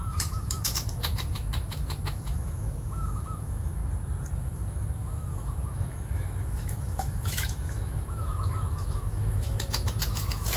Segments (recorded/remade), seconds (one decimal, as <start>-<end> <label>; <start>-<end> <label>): 0.0-3.8 remade; 3.8-4.3 recorded; 4.3-10.6 remade